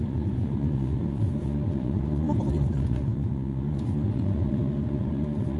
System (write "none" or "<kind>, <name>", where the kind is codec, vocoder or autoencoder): vocoder, Vocos